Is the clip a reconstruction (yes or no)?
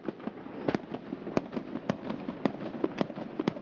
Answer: no